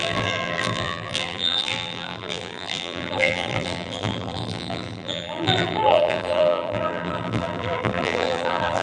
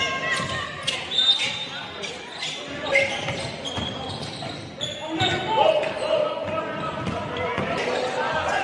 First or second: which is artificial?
first